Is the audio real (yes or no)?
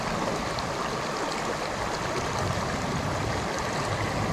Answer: yes